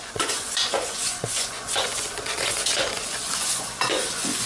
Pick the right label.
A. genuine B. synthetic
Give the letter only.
B